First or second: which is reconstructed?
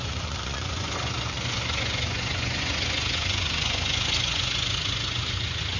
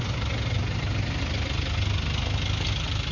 first